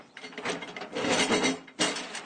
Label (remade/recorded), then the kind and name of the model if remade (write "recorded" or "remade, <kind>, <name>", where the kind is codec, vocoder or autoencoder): recorded